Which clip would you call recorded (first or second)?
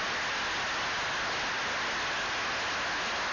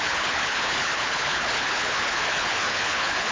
first